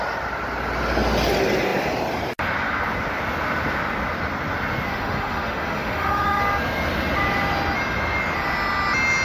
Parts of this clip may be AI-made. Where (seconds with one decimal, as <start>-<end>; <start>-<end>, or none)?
4.9-6.4